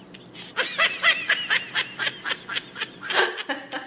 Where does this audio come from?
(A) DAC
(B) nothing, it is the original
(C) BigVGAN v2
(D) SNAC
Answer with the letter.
B